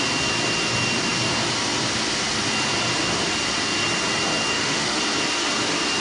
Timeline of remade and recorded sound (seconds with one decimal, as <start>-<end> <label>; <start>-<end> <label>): 0.0-4.5 recorded; 4.5-5.0 remade; 5.0-6.0 recorded